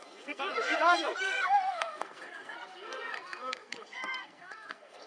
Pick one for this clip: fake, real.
fake